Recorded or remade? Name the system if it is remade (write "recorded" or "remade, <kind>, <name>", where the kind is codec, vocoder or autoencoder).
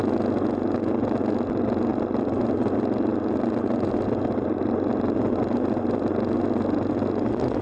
recorded